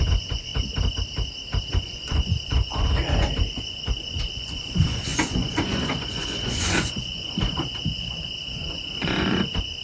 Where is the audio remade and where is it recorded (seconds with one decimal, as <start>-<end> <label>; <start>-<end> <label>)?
0.0-0.5 remade; 0.5-1.7 recorded; 1.7-9.8 remade